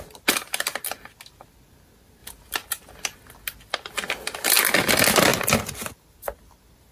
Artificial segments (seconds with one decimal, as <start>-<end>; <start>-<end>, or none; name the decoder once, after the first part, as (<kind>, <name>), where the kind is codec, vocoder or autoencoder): none